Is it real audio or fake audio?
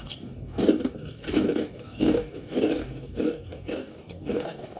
fake